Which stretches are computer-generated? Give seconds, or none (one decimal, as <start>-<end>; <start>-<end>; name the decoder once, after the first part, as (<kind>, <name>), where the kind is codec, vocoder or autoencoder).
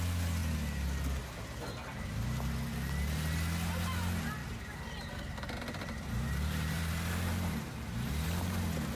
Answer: 4.4-8.1 (vocoder, BigVGAN v2)